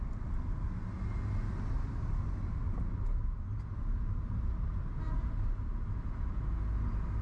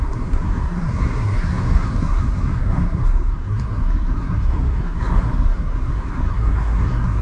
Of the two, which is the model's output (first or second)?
second